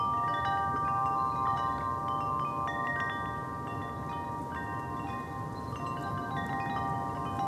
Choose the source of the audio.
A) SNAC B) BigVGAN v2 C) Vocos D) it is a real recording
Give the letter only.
D